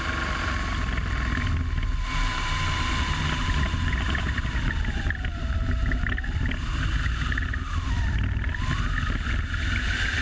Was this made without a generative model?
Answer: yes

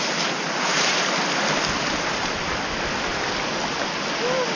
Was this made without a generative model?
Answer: yes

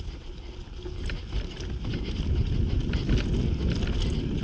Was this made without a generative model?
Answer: yes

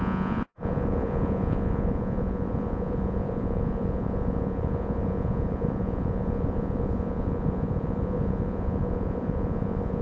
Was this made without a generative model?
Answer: no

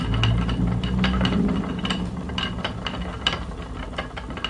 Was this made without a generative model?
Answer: yes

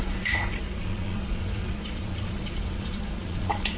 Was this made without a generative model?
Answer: no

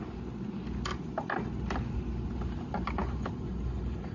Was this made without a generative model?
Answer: yes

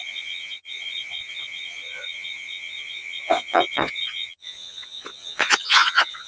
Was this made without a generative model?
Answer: no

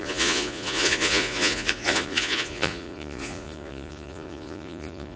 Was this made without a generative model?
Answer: no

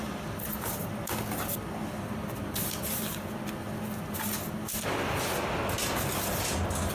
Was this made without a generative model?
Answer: yes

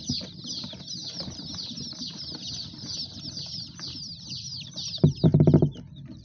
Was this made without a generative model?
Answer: yes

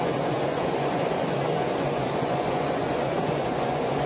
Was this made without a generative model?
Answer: no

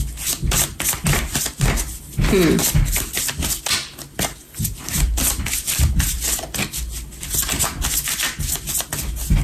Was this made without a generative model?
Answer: yes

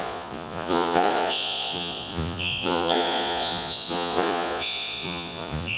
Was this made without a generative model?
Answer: no